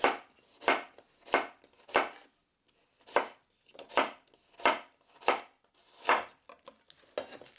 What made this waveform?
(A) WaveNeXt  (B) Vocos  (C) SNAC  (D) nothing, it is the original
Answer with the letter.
D